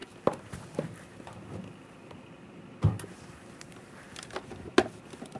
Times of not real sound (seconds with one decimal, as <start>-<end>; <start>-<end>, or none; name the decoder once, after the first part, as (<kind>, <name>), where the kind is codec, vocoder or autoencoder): none

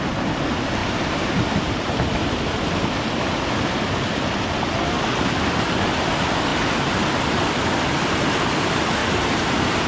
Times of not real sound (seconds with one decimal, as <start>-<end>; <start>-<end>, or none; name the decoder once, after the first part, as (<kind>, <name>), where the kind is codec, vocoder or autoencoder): 0.8-2.1 (vocoder, BigVGAN v2); 9.0-9.9

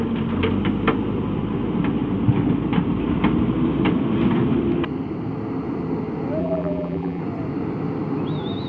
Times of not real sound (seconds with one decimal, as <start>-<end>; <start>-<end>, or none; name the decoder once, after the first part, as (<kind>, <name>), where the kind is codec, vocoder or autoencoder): 6.4-7.2 (vocoder, BigVGAN v2)

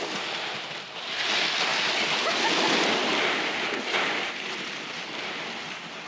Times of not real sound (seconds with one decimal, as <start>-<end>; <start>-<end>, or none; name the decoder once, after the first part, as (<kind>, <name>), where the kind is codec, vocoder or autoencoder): 1.7-5.4 (vocoder, BigVGAN v2)

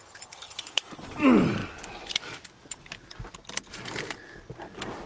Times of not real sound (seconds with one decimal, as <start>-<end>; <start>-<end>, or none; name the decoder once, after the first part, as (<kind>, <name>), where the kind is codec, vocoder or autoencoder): 0.0-1.6 (vocoder, BigVGAN v2)